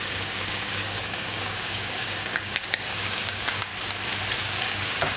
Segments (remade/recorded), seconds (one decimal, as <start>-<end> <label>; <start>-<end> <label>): 0.0-3.7 remade; 3.7-4.4 recorded; 4.4-5.2 remade